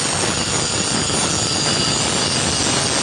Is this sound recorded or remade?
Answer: recorded